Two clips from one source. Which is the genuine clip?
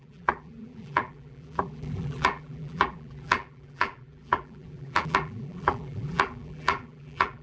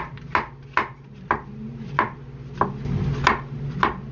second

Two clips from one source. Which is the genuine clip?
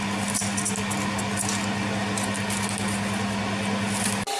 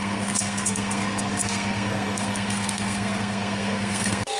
first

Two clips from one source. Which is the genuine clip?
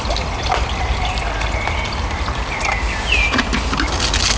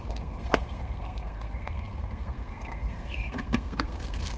first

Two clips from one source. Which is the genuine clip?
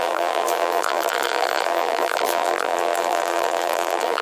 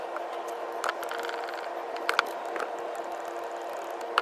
second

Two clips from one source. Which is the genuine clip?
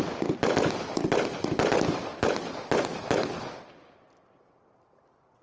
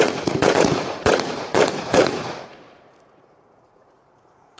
first